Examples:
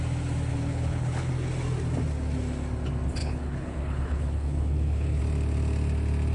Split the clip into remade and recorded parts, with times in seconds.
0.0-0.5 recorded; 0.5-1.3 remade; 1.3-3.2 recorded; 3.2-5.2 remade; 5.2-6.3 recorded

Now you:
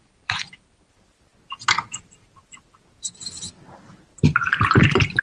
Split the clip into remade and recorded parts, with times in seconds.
0.0-1.3 remade; 1.3-4.4 recorded; 4.4-5.2 remade

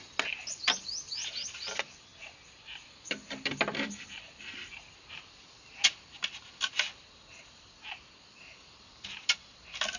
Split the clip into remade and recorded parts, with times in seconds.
0.0-10.0 recorded

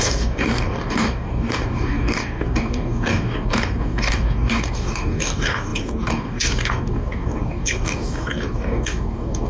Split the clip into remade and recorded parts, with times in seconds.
0.0-9.5 remade

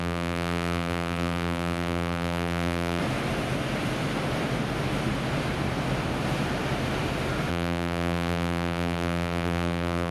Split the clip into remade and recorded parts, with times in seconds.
0.0-3.0 remade; 3.0-7.5 recorded; 7.5-10.1 remade

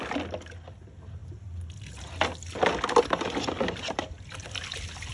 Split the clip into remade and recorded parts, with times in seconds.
0.0-5.1 recorded